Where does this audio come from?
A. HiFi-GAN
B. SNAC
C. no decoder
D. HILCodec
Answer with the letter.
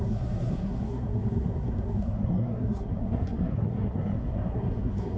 B